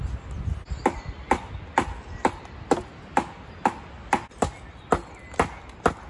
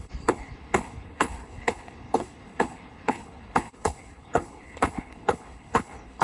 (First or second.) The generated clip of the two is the second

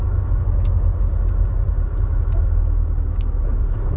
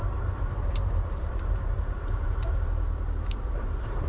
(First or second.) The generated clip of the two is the second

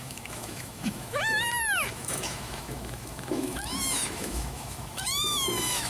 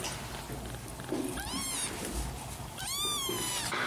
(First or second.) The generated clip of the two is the first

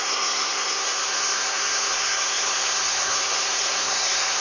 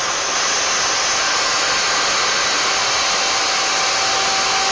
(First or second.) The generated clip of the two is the first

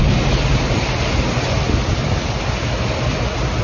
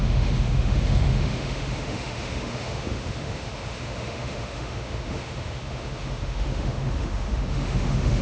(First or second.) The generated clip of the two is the second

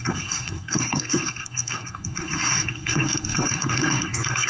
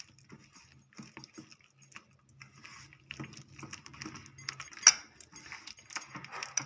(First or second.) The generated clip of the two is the first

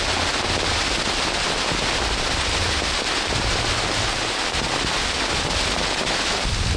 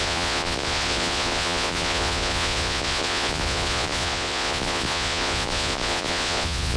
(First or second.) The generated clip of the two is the second